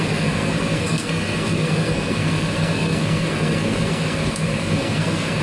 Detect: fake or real fake